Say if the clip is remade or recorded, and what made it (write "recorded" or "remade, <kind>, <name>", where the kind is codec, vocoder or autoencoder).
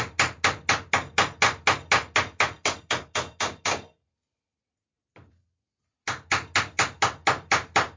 recorded